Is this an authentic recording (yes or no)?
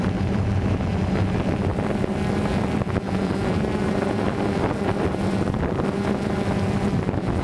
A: yes